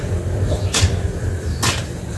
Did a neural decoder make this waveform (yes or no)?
no